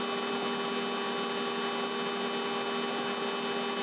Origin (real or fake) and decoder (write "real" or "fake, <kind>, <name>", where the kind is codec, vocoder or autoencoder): real